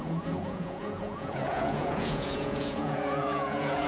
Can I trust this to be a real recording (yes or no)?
no